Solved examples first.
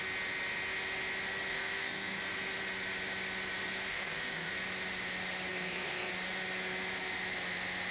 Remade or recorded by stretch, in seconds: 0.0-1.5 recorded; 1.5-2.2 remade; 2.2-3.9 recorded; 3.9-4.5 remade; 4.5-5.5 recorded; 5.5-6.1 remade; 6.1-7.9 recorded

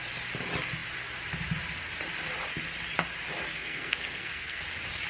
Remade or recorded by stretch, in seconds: 0.0-3.5 recorded; 3.5-4.6 remade; 4.6-5.1 recorded

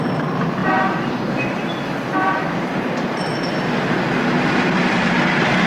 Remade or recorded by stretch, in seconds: 0.0-0.6 recorded; 0.6-4.0 remade; 4.0-5.7 recorded

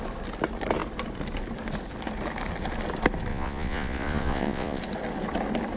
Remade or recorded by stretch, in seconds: 0.0-3.3 recorded; 3.3-4.8 remade; 4.8-5.8 recorded

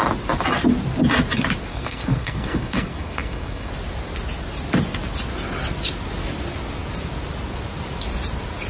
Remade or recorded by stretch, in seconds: 0.0-1.7 recorded; 1.7-3.7 remade; 3.7-8.7 recorded

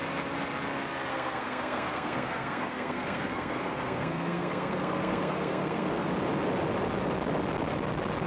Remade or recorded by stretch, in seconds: 0.0-1.1 recorded; 1.1-6.1 remade; 6.1-8.3 recorded

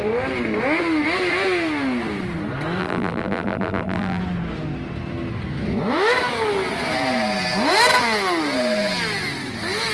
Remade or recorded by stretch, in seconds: 0.0-2.8 recorded; 2.8-4.2 remade; 4.2-9.9 recorded